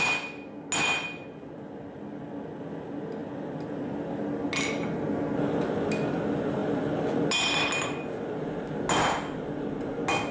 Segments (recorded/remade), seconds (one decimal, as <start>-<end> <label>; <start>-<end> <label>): 0.0-10.3 recorded